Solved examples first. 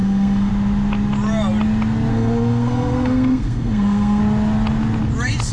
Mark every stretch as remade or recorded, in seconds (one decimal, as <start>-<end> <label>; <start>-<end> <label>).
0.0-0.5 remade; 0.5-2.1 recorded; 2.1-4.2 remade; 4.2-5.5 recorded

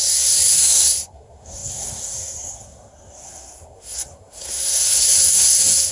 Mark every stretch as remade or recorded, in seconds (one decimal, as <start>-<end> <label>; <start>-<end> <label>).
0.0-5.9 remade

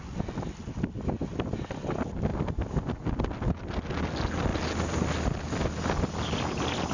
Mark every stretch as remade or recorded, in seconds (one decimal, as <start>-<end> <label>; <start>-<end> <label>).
0.0-6.9 recorded